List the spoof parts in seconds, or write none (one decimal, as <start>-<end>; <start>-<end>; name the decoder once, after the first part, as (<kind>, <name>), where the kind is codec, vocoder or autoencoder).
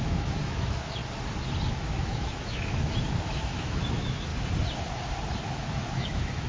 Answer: 0.0-1.0 (autoencoder, DAC-VAE); 1.7-4.3; 5.5-6.5